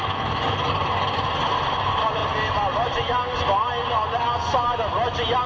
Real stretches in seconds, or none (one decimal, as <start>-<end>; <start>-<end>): 0.0-5.5